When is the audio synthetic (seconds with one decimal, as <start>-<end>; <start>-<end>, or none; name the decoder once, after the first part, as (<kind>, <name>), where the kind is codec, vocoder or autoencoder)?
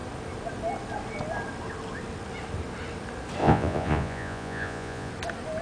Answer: 3.4-5.1 (vocoder, Vocos)